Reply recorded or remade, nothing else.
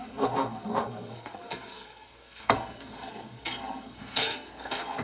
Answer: remade